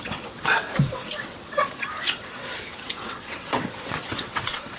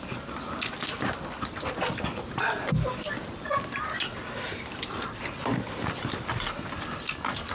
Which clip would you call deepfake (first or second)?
first